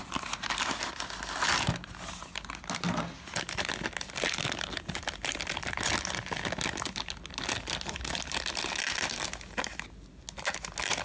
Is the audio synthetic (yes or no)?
no